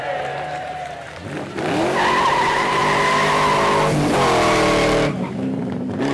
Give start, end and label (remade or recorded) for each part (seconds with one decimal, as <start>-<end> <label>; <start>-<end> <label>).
0.0-1.0 remade; 1.0-2.3 recorded; 2.3-2.8 remade; 2.8-5.2 recorded; 5.2-6.1 remade